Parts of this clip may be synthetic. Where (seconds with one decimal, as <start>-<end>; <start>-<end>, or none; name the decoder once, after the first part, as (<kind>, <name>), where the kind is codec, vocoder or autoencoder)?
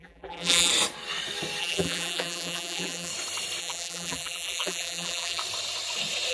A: 0.0-0.7 (vocoder, BigVGAN v2); 1.6-3.1; 3.6-5.4